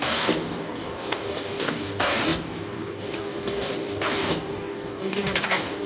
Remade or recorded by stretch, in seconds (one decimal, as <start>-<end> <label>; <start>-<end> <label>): 0.0-5.9 remade